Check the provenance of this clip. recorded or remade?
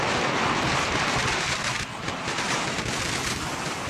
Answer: recorded